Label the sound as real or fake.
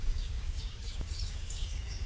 fake